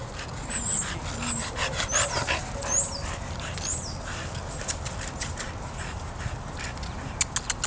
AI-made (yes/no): no